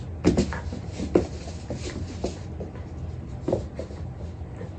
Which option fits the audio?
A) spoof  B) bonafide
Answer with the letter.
B